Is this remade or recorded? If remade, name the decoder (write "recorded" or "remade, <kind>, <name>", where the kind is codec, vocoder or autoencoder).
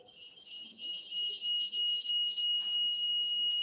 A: recorded